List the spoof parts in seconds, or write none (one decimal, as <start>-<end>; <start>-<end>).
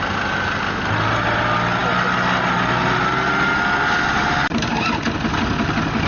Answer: none